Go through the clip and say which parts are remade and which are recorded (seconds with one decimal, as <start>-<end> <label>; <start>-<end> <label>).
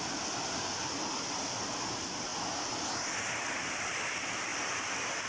0.0-2.3 remade; 2.3-4.0 recorded; 4.0-4.5 remade; 4.5-5.3 recorded